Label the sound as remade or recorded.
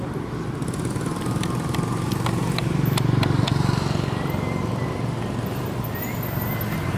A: recorded